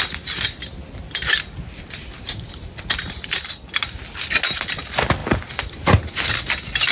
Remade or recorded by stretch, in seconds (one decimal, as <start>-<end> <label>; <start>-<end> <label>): 0.0-6.9 recorded